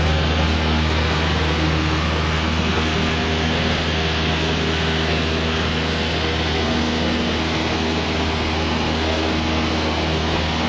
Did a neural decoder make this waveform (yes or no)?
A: yes